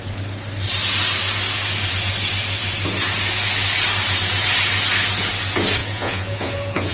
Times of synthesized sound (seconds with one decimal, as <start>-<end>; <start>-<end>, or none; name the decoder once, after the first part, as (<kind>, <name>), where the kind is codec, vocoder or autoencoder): 5.8-6.9 (vocoder, Vocos)